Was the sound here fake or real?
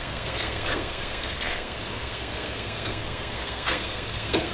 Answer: fake